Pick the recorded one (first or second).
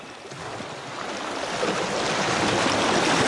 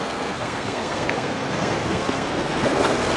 first